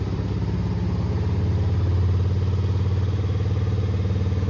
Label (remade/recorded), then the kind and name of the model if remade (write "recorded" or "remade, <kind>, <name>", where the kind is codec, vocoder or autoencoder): recorded